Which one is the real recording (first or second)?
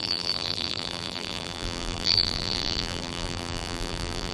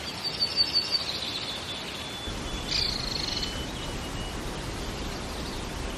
second